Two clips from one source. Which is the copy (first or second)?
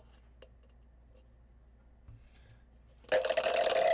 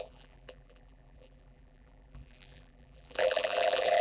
second